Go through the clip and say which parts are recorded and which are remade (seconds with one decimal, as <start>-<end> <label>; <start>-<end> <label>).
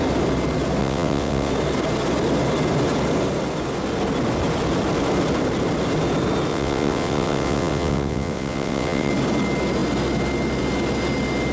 0.0-0.8 recorded; 0.8-1.5 remade; 1.5-6.5 recorded; 6.5-9.1 remade; 9.1-11.5 recorded